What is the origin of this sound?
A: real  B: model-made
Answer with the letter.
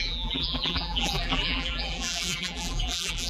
B